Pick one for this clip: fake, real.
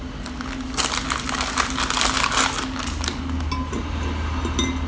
real